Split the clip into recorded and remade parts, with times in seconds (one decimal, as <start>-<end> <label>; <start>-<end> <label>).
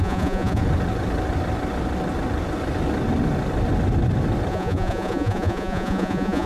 0.0-0.6 remade; 0.6-4.5 recorded; 4.5-6.5 remade